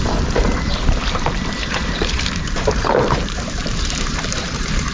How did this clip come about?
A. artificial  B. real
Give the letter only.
A